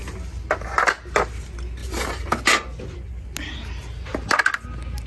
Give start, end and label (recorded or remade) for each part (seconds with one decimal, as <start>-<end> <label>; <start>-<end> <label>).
0.0-5.1 recorded